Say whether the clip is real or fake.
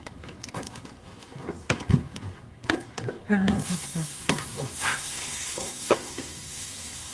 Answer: fake